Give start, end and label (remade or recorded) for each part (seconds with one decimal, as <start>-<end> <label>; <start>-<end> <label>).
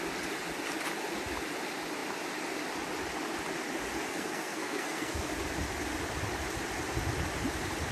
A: 0.0-4.1 recorded; 4.1-5.3 remade; 5.3-7.9 recorded